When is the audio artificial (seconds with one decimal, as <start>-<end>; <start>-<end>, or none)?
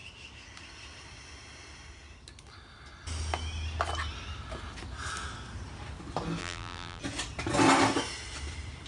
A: 6.4-7.0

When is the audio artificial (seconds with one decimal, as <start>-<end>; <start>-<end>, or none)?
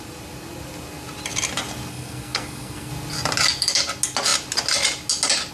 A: 1.9-2.9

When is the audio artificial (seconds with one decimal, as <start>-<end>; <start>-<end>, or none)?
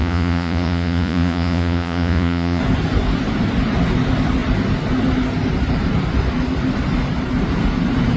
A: 0.0-2.6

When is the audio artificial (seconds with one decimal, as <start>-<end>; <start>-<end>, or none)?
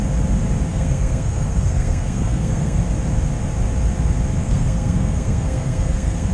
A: 0.7-2.8; 4.4-6.3